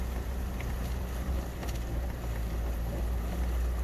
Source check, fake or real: real